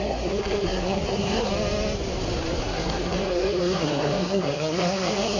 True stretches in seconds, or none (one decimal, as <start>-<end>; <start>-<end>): 1.5-2.6